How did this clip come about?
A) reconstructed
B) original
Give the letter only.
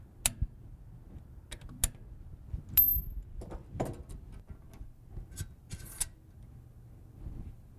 B